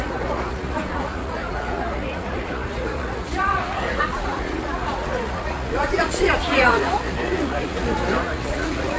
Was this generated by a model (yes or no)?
yes